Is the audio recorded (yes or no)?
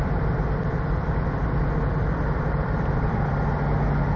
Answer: no